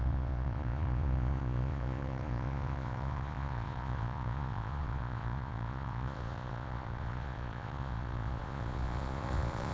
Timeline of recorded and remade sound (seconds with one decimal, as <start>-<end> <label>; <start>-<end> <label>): 0.0-9.7 remade